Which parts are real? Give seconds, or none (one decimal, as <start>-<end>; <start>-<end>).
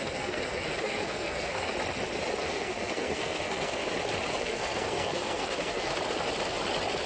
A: 1.7-2.4; 3.8-4.4; 5.9-7.1